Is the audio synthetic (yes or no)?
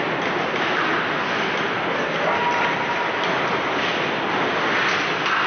no